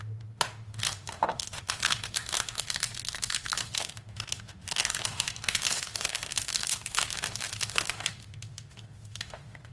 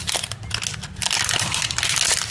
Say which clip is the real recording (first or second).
second